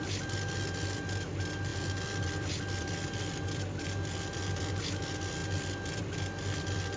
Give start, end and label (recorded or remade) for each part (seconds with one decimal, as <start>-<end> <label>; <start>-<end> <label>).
0.0-7.0 recorded